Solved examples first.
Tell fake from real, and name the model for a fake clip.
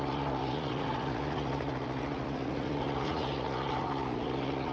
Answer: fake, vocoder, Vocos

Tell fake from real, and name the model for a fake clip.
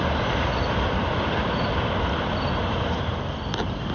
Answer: real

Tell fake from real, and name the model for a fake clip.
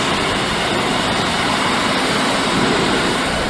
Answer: fake, vocoder, BigVGAN v2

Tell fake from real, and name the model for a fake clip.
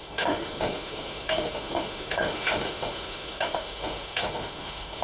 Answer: fake, autoencoder, DAC-VAE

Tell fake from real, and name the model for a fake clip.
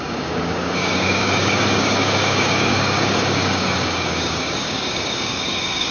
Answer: fake, codec, DAC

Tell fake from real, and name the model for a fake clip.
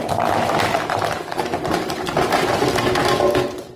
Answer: real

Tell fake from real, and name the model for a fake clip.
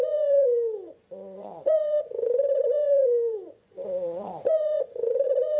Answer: fake, vocoder, Vocos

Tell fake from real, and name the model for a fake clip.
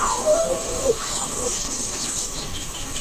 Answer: fake, codec, DAC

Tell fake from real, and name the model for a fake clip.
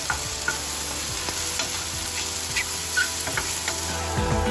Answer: real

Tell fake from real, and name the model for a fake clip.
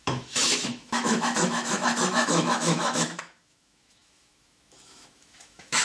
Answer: fake, autoencoder, DAC-VAE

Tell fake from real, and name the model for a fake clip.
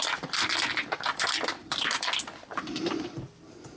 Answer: fake, vocoder, BigVGAN v2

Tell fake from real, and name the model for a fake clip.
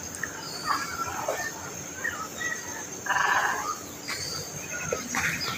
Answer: real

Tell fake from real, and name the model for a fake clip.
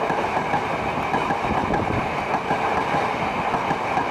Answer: real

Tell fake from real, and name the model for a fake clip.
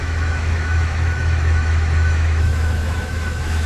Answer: fake, autoencoder, DAC-VAE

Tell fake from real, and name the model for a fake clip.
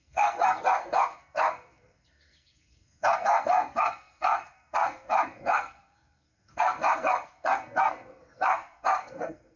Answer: fake, codec, SNAC